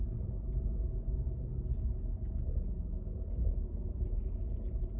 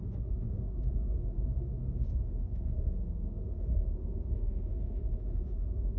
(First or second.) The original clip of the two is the first